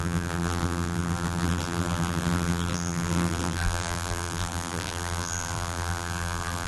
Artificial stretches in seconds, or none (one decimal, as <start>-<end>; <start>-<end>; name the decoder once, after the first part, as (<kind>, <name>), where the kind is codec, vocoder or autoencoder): 0.0-6.7 (vocoder, BigVGAN v2)